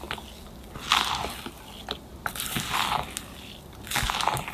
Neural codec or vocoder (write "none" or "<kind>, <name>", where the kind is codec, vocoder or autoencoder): none